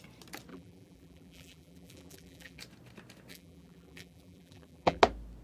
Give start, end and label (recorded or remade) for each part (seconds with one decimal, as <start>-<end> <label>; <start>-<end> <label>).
0.0-0.5 recorded; 0.5-2.6 remade; 2.6-3.3 recorded; 3.3-5.0 remade; 5.0-5.4 recorded